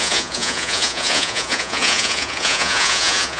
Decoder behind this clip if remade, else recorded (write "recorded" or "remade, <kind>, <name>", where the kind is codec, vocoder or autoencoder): remade, vocoder, Vocos